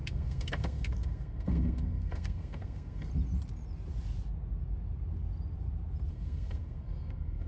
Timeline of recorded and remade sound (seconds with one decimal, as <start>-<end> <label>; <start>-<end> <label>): 0.0-3.1 remade; 3.1-6.1 recorded; 6.1-7.5 remade